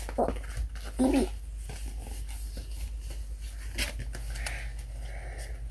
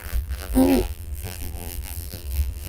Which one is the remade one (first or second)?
second